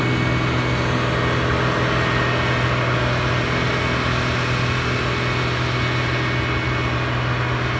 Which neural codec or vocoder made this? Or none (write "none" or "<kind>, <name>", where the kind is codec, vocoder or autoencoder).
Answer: none